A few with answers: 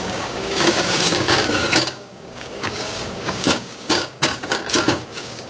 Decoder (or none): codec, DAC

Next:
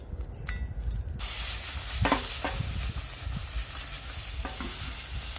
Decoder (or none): none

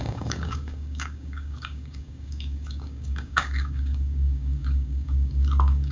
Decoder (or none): codec, DAC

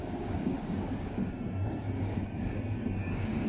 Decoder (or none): codec, DAC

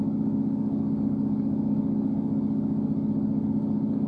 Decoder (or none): codec, DAC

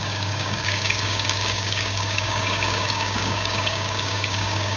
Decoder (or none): codec, DAC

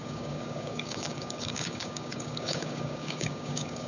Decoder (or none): codec, DAC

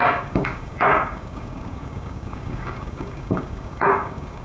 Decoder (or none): codec, DAC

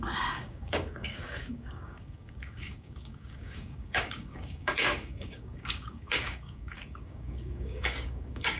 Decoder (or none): codec, DAC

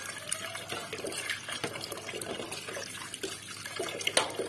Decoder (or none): none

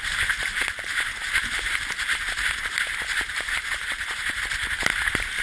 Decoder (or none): none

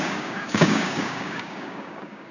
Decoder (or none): codec, DAC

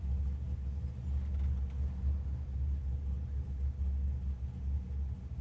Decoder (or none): none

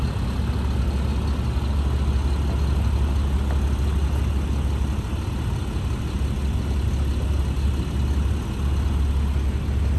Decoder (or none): none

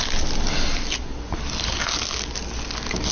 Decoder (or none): none